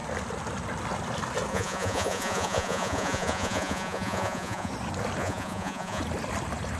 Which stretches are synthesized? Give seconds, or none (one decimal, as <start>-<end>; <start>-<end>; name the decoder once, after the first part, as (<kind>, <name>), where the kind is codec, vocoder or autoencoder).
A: 1.5-4.7 (vocoder, Vocos); 5.2-6.0